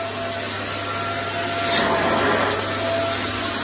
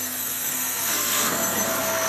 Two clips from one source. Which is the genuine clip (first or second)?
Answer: first